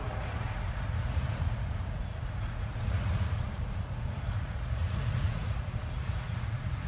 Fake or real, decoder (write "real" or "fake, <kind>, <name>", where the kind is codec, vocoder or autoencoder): fake, vocoder, Vocos